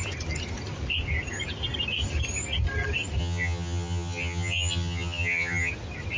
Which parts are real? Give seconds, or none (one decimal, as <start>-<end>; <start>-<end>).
0.0-3.2; 5.7-6.2